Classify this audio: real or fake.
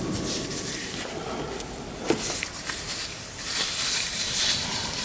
fake